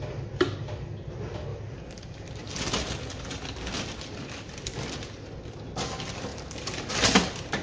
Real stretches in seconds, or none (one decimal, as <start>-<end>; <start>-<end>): 0.0-1.5; 2.5-6.3; 6.9-7.6